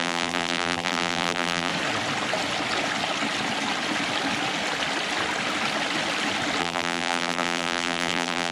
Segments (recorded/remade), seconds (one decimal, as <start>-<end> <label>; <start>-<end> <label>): 0.0-1.7 remade; 1.7-6.6 recorded; 6.6-8.5 remade